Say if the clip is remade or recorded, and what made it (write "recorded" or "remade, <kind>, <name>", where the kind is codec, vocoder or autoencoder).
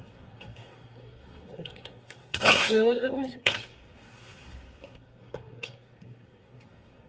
remade, codec, SNAC